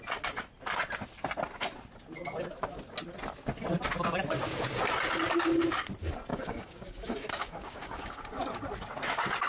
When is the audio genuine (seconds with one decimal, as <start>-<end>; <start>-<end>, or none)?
0.0-6.3; 8.2-9.5